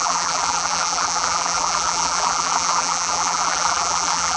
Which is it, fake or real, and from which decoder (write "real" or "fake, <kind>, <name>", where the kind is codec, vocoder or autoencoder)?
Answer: fake, vocoder, BigVGAN v2